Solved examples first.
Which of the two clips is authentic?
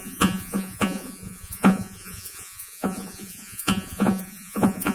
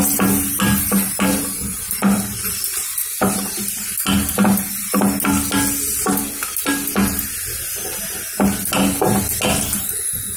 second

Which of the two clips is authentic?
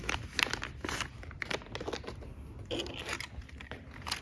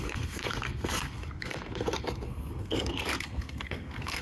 first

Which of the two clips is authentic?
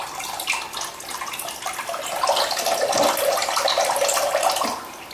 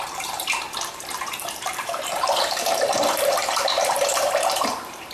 first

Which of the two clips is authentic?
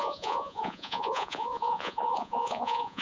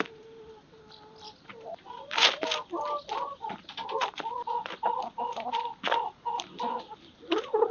second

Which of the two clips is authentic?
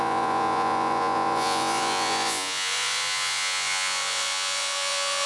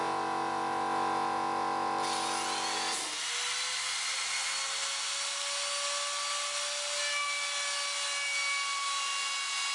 second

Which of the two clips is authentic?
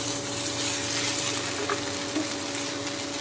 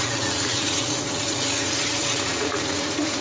first